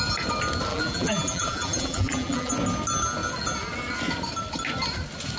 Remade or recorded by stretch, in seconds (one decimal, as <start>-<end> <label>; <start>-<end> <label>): 0.0-0.7 recorded; 0.7-2.5 remade; 2.5-5.4 recorded